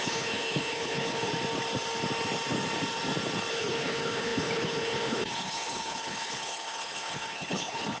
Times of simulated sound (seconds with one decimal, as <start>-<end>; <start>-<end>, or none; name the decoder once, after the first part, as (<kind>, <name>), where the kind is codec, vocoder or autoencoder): 0.0-1.3 (codec, HILCodec); 3.5-8.0